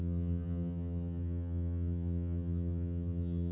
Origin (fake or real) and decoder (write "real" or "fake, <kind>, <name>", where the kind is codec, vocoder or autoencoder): fake, vocoder, HiFi-GAN